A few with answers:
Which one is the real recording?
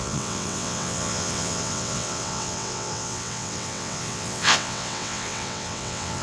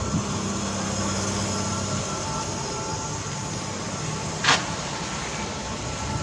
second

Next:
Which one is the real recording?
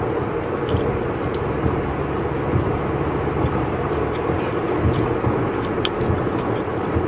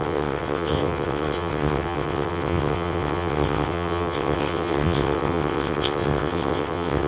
first